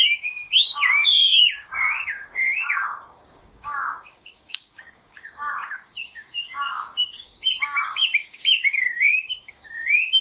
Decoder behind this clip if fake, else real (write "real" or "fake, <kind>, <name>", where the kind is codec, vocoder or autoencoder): fake, codec, DAC